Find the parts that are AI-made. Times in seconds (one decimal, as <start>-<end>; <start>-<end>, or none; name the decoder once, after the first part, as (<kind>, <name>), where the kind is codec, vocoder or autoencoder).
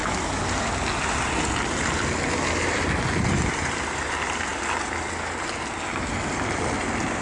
2.8-4.5 (vocoder, BigVGAN v2); 6.5-7.2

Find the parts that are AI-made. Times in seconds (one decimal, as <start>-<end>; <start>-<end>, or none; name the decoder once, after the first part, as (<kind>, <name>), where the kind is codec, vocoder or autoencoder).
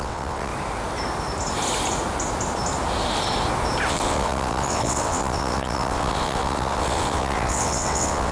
0.0-0.5 (vocoder, WaveNeXt); 3.9-8.3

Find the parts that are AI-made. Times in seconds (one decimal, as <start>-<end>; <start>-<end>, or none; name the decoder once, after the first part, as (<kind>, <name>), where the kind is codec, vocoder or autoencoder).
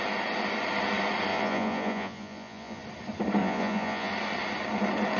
1.3-2.8 (vocoder, Vocos); 3.4-4.1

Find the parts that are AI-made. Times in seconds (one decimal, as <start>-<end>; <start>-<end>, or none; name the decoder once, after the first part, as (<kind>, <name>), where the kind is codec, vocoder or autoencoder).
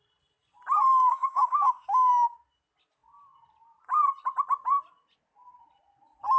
0.9-2.1 (autoencoder, DAC-VAE)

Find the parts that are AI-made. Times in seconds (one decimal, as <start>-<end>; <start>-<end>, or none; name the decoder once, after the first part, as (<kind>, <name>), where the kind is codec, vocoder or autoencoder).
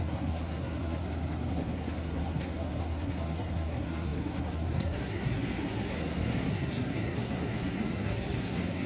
0.0-1.0 (codec, SNAC); 1.5-8.9